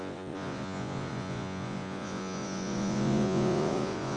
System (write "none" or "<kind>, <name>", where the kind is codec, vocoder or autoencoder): vocoder, Vocos